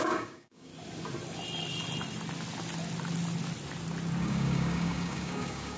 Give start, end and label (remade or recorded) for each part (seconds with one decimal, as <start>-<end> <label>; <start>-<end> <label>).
0.0-0.7 remade; 0.7-4.2 recorded; 4.2-5.8 remade